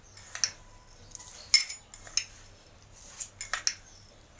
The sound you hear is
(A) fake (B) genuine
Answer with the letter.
B